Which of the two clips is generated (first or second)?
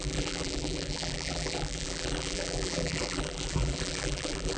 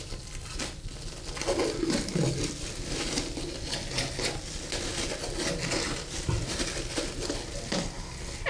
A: first